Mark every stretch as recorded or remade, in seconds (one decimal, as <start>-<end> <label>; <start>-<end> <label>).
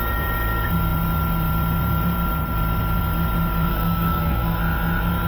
0.0-3.7 recorded; 3.7-4.6 remade; 4.6-5.3 recorded